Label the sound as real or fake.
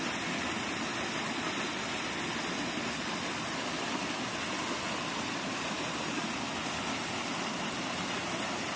real